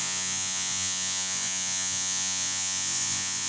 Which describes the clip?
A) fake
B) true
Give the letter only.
A